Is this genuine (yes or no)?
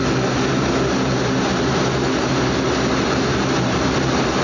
yes